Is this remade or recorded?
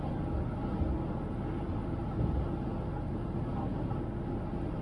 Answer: recorded